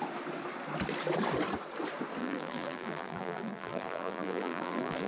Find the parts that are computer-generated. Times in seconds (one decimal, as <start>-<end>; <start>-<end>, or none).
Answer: 2.2-5.1